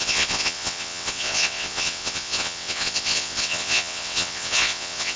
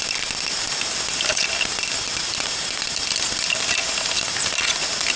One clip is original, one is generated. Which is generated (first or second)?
first